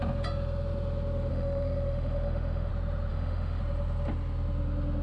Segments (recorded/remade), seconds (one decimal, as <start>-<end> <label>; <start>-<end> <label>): 0.0-1.3 recorded; 1.3-2.7 remade; 2.7-3.1 recorded; 3.1-3.6 remade; 3.6-5.0 recorded